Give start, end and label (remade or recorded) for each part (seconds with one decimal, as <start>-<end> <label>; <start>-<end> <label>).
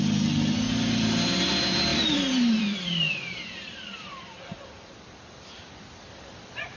0.0-1.9 recorded; 1.9-3.1 remade; 3.1-6.8 recorded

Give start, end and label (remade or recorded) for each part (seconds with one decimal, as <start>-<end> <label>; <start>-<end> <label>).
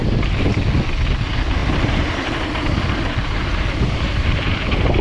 0.0-0.5 remade; 0.5-1.6 recorded; 1.6-4.6 remade; 4.6-5.0 recorded